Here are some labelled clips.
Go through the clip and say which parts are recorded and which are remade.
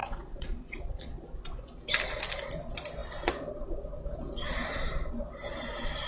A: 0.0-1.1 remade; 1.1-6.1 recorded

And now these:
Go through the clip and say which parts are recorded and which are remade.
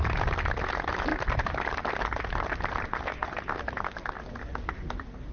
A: 0.0-5.3 recorded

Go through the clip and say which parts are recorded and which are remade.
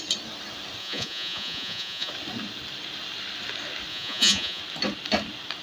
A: 0.0-0.8 recorded; 0.8-2.1 remade; 2.1-3.9 recorded; 3.9-4.6 remade; 4.6-5.6 recorded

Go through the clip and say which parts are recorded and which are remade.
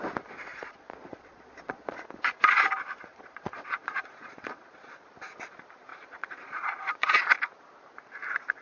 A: 0.0-0.5 recorded; 0.5-2.1 remade; 2.1-3.1 recorded; 3.1-5.1 remade; 5.1-5.9 recorded; 5.9-7.3 remade; 7.3-8.6 recorded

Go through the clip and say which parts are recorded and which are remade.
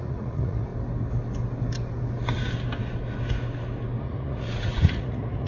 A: 0.0-0.7 remade; 0.7-4.0 recorded; 4.0-5.5 remade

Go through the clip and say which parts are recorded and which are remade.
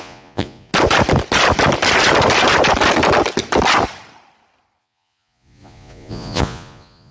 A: 0.0-0.7 remade; 0.7-4.8 recorded; 4.8-7.1 remade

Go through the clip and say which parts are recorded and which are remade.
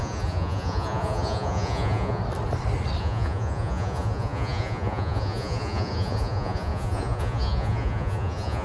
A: 0.0-2.2 remade; 2.2-3.0 recorded; 3.0-8.6 remade